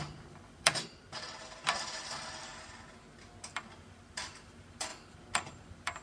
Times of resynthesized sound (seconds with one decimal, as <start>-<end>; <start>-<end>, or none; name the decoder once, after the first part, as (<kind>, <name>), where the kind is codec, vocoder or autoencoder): 0.0-2.5 (vocoder, BigVGAN v2); 3.5-6.0